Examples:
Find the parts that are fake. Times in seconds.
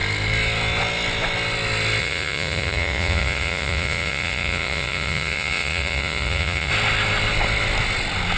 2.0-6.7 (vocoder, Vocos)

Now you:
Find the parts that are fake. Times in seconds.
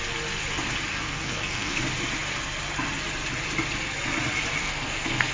0.9-1.8 (codec, SNAC); 4.6-5.3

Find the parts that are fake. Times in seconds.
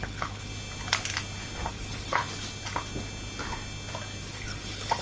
0.0-0.5 (codec, HILCodec); 1.7-2.2; 4.2-5.0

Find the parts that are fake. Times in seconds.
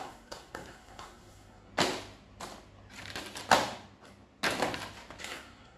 0.0-1.7 (codec, SNAC); 5.2-5.8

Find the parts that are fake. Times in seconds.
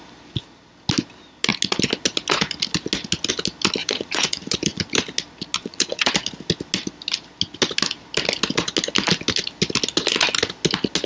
3.8-4.8 (vocoder, Vocos); 5.6-6.1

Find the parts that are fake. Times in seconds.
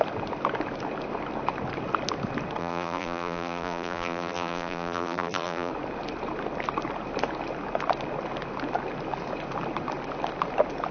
2.6-5.7 (vocoder, BigVGAN v2)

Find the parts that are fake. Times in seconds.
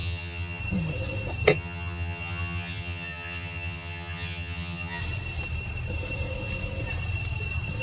0.0-0.6 (vocoder, HiFi-GAN); 1.5-5.0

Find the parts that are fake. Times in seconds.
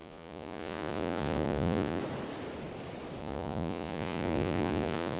0.0-2.0 (vocoder, Vocos); 3.2-5.2